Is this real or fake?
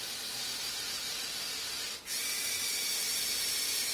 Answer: real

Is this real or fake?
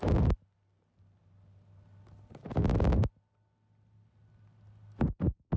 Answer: real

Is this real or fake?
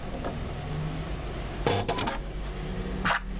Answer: real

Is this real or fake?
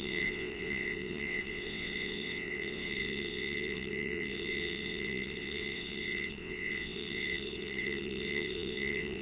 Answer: fake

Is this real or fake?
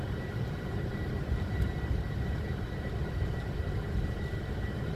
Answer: fake